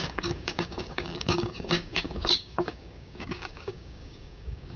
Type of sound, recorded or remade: remade